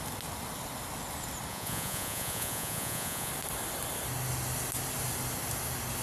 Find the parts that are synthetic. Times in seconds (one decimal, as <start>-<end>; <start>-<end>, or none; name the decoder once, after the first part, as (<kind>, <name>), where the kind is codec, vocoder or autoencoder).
1.5-3.3 (vocoder, Vocos)

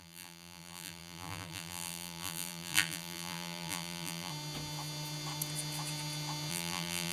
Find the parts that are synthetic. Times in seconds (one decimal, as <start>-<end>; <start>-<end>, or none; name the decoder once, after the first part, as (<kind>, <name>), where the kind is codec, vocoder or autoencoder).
0.0-4.3 (vocoder, BigVGAN v2); 6.5-7.1

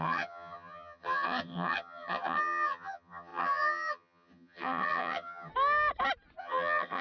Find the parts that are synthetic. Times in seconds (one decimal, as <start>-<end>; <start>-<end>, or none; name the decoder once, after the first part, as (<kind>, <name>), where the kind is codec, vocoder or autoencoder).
0.0-5.5 (vocoder, HiFi-GAN); 6.4-7.0

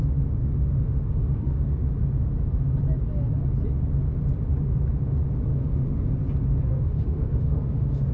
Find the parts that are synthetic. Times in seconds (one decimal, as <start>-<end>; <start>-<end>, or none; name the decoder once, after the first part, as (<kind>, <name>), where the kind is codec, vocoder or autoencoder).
0.4-1.9 (autoencoder, DAC-VAE); 5.5-6.1; 6.7-8.1

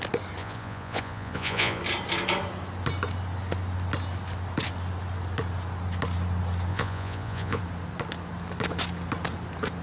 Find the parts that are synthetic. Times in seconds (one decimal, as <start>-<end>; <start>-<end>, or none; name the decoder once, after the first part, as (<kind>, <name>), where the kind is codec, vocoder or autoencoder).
0.4-1.8 (vocoder, Vocos); 6.7-7.6

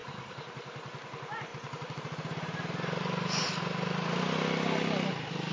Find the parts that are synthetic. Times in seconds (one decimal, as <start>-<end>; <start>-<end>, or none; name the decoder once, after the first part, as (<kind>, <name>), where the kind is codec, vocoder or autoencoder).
0.0-0.9 (vocoder, BigVGAN v2); 1.5-3.6